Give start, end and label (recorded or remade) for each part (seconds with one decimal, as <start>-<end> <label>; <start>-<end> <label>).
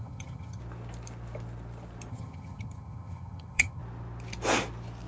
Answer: 0.0-0.6 remade; 0.6-2.1 recorded; 2.1-3.8 remade; 3.8-5.1 recorded